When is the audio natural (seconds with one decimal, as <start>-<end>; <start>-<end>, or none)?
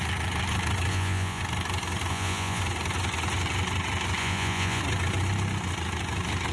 0.0-0.9; 1.4-2.1; 2.6-4.2; 4.8-6.5